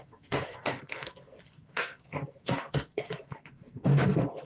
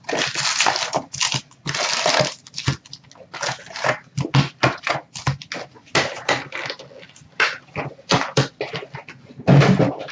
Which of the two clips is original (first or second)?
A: second